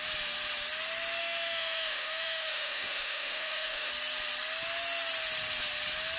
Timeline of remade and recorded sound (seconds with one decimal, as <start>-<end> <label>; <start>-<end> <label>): 0.0-1.2 recorded; 1.2-3.9 remade; 3.9-6.2 recorded